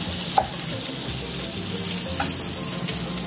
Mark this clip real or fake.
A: real